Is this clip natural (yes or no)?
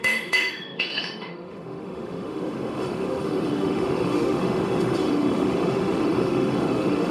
no